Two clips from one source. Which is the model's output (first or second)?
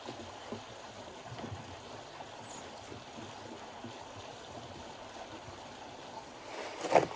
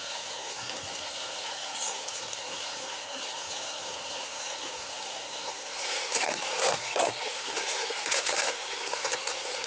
second